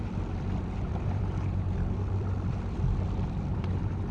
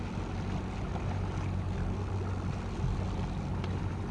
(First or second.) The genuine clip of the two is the second